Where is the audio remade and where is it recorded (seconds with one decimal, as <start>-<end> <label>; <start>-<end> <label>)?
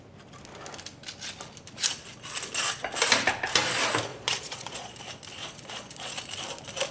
0.0-4.1 recorded; 4.1-5.0 remade; 5.0-5.4 recorded; 5.4-6.2 remade; 6.2-6.9 recorded